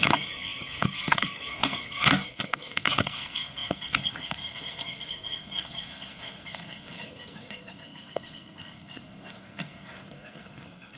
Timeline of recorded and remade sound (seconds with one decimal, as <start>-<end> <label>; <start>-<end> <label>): 0.0-11.0 remade